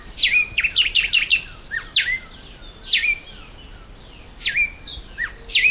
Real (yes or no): yes